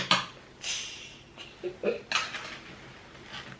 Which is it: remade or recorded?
recorded